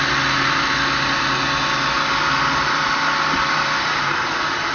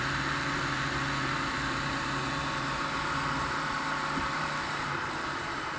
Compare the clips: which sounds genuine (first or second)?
first